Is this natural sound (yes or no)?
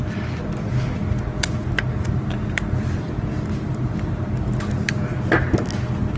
yes